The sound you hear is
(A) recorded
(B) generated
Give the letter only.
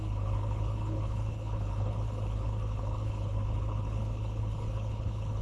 B